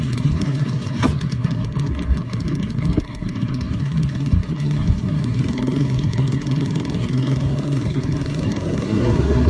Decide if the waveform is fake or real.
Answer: fake